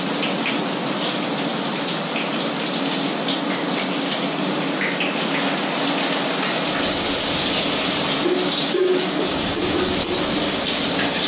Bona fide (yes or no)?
yes